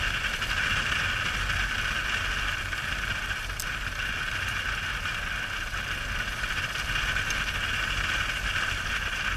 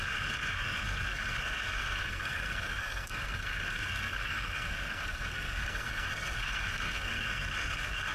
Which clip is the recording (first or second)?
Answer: first